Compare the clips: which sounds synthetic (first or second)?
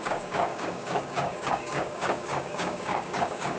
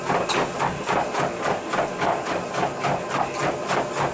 first